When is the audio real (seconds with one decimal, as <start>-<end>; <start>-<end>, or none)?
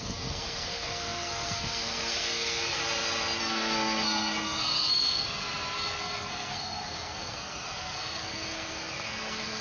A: 2.8-3.4